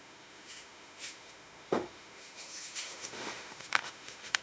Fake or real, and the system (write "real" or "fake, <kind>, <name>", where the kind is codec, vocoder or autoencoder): fake, autoencoder, DAC-VAE